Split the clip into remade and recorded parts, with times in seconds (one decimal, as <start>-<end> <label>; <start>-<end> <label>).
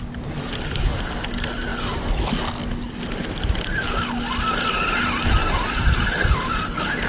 0.0-5.4 recorded; 5.4-6.5 remade; 6.5-7.1 recorded